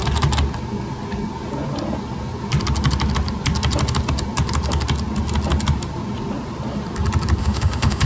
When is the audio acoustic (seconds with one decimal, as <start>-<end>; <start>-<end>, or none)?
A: 0.0-7.4